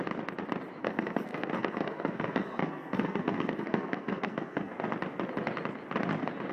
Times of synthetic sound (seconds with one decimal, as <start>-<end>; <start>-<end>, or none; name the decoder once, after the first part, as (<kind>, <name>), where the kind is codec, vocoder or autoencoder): 0.8-4.7 (codec, SNAC)

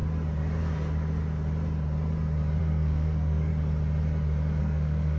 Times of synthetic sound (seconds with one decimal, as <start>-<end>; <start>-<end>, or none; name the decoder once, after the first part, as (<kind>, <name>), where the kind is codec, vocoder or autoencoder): 2.6-3.5 (codec, SNAC); 4.6-5.2

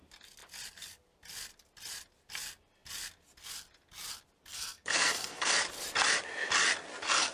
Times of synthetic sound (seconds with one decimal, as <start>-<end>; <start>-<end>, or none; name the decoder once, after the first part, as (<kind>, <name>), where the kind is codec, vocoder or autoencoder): 4.5-5.5 (codec, SNAC)

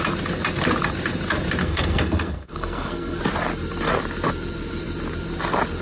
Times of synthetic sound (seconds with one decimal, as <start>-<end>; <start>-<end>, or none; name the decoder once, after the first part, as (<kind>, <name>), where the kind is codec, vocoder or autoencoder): 1.6-3.2 (codec, SNAC)

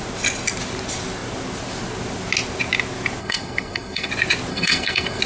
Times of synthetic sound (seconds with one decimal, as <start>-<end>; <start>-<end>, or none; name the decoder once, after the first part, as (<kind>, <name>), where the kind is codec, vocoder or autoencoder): 3.2-4.1 (codec, SNAC); 4.5-5.2